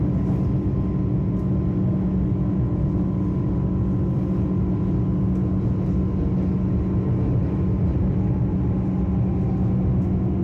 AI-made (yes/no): no